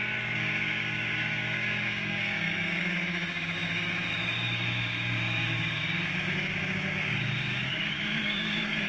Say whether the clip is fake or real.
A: fake